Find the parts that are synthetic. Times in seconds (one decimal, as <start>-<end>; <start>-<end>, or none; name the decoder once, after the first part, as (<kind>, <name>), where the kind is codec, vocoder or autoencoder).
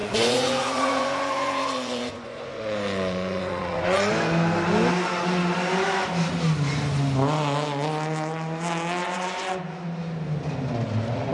0.0-4.1 (vocoder, Vocos); 9.0-9.5